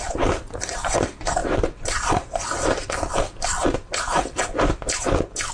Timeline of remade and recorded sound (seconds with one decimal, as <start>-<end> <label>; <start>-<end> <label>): 0.0-5.5 recorded